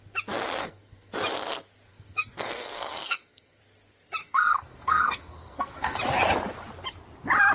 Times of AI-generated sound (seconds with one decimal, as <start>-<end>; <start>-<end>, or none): 0.6-1.1; 1.9-3.6; 4.2-6.0